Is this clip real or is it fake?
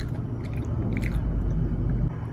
real